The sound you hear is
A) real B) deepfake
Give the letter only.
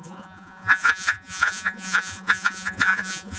B